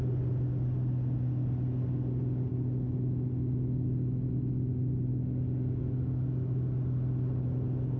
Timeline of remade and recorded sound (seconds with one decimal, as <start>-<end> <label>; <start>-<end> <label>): 0.0-8.0 recorded